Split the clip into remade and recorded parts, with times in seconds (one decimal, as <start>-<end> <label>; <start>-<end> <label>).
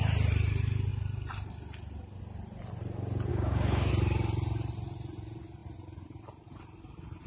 0.0-3.3 recorded; 3.3-3.9 remade; 3.9-7.3 recorded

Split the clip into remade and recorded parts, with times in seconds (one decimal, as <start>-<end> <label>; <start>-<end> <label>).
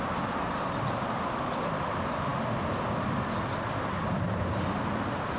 0.0-5.4 recorded